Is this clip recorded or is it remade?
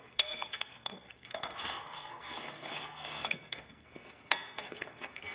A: remade